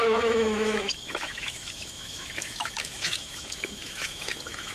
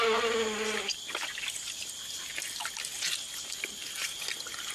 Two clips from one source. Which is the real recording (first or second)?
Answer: second